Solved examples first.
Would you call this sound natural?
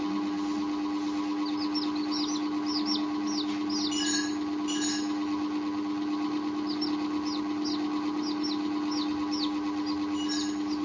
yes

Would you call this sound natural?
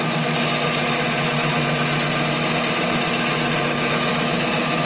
yes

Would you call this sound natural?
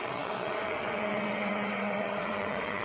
no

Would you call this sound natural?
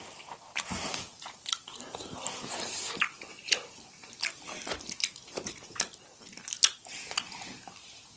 yes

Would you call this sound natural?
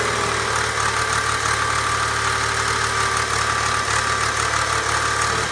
yes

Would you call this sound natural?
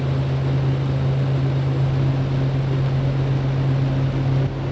yes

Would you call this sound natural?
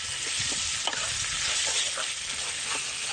yes